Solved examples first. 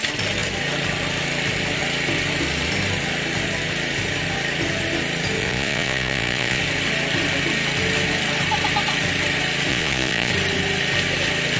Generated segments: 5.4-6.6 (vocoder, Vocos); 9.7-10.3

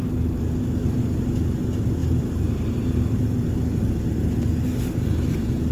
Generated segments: 2.0-4.0 (vocoder, BigVGAN v2)

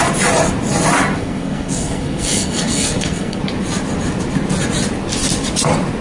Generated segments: 1.2-3.4 (codec, SNAC)

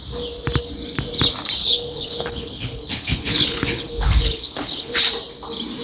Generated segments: 1.6-5.0 (codec, HILCodec)

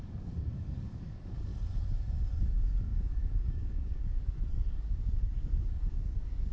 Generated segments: 0.0-1.5 (codec, DAC); 2.4-6.5